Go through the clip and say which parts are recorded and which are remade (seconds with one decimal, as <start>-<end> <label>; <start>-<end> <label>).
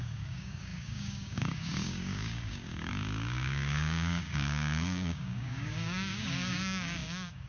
0.0-7.5 remade